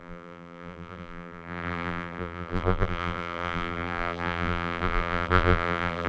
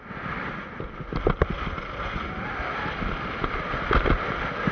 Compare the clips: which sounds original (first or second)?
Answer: second